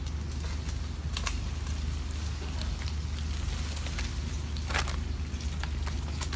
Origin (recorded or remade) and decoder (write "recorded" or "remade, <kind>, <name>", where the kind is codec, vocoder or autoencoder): recorded